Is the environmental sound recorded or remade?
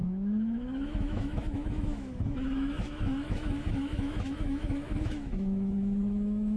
remade